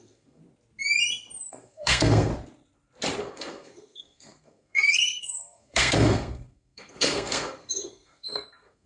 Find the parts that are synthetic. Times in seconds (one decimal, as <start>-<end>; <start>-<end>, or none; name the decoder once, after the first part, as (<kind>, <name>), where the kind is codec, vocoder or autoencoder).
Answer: 0.0-0.4 (codec, SNAC); 1.5-2.3; 3.2-8.9